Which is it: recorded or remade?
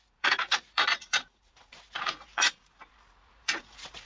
remade